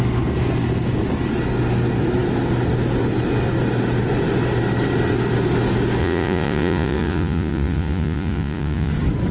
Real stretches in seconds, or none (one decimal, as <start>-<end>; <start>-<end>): 0.0-6.0; 8.9-9.3